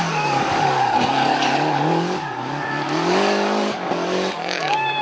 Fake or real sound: fake